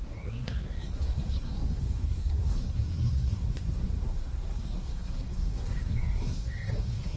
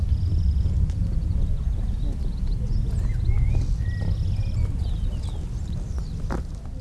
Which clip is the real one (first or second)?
second